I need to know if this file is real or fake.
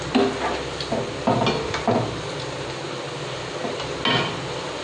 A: real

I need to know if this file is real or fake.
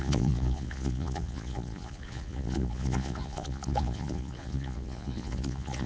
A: fake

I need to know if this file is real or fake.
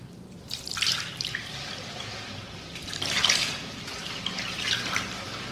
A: fake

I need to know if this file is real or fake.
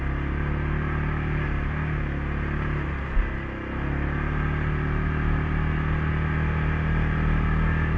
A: real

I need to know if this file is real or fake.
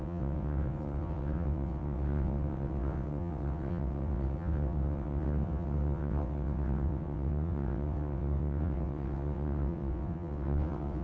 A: fake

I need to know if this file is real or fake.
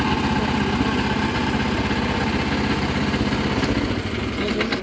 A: real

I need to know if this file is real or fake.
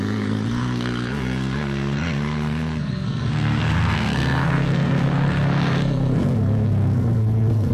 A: fake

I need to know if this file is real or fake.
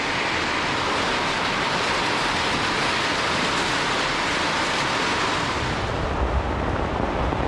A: real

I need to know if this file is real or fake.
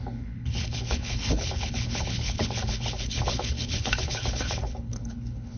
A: fake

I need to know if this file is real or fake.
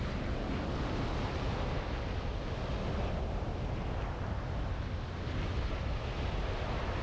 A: real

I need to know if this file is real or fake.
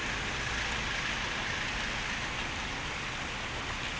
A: real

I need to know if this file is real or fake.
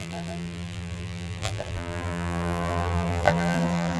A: fake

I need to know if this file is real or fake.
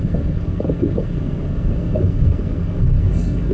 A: fake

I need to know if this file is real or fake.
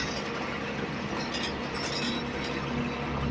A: real